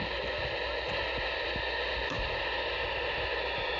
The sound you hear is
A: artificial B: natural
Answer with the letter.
B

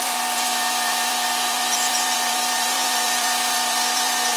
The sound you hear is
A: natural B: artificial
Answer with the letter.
B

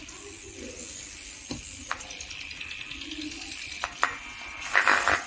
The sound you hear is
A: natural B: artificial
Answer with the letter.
A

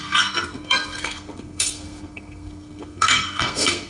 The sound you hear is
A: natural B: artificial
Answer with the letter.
B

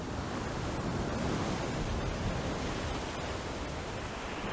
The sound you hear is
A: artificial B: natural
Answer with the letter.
B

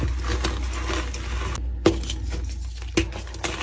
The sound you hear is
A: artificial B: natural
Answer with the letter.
B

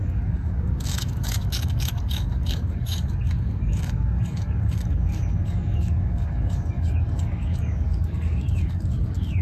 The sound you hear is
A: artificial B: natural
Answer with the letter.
A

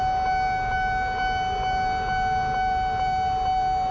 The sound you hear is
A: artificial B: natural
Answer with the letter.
B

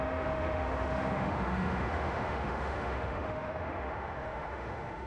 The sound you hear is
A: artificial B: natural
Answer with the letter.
A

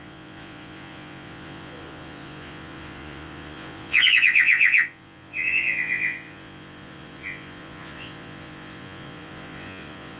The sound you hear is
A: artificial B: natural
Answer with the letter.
A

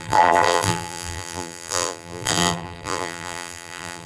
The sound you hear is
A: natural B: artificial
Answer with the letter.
B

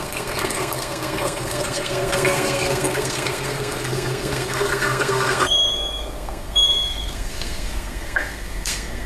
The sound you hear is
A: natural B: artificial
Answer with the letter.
B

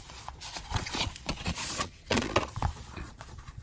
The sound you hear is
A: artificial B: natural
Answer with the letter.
A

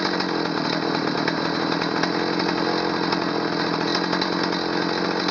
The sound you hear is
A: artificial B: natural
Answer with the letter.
B